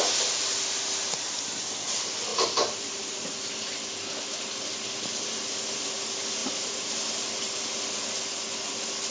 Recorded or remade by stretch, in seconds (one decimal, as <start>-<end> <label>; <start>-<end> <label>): 0.0-2.3 recorded; 2.3-3.8 remade; 3.8-6.4 recorded; 6.4-6.9 remade; 6.9-9.1 recorded